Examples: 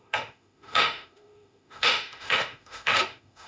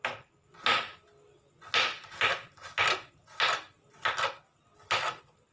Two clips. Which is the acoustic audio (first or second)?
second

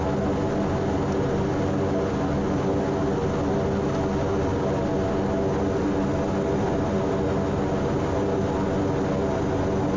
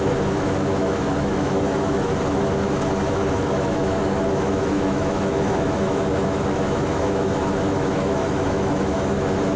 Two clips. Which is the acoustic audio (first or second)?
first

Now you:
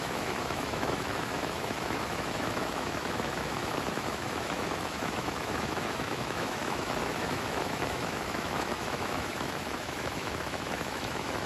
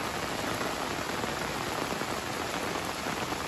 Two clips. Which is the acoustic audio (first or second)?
second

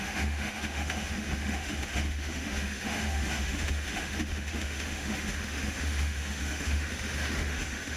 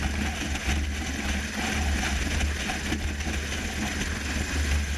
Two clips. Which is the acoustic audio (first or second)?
second